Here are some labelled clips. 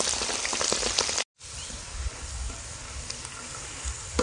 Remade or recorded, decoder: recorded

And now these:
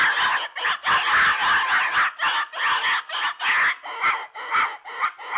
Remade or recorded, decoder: recorded